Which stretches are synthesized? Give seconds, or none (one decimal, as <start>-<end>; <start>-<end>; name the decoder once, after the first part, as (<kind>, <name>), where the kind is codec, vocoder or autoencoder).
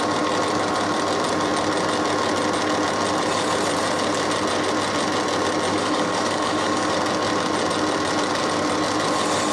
5.7-6.9 (codec, DAC)